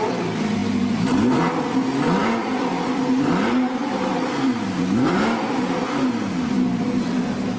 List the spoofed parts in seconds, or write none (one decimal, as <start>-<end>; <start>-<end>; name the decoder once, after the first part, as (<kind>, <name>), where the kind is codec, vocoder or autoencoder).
2.2-5.6 (vocoder, BigVGAN v2)